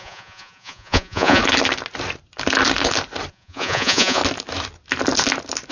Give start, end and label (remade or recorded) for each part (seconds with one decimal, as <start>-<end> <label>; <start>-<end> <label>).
0.0-1.4 remade; 1.4-3.3 recorded; 3.3-4.2 remade; 4.2-5.7 recorded